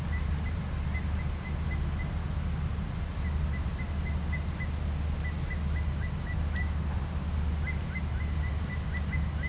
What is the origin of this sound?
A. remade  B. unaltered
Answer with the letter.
B